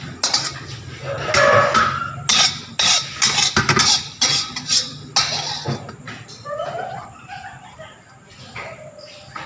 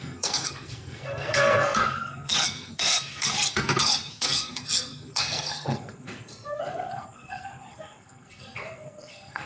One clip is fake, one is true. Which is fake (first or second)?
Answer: second